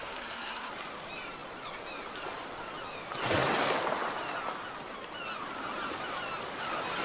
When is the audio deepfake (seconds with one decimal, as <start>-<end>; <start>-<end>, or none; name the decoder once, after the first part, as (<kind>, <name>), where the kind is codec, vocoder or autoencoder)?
0.0-0.7 (codec, SNAC)